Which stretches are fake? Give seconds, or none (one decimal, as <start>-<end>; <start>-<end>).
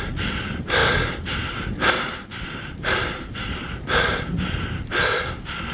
0.8-4.2